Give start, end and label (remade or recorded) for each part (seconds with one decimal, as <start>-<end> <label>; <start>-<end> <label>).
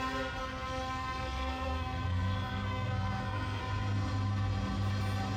0.0-0.4 recorded; 0.4-3.6 remade; 3.6-5.4 recorded